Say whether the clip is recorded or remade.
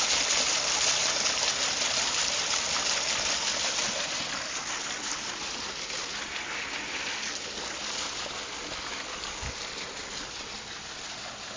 recorded